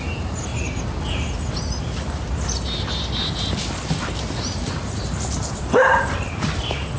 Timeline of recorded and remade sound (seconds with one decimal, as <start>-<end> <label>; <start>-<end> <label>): 0.0-0.5 remade; 0.5-4.7 recorded; 4.7-7.0 remade